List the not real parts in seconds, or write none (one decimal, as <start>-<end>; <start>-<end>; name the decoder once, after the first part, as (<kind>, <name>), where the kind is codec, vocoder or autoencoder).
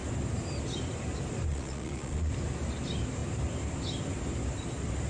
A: 1.5-2.3 (vocoder, Vocos)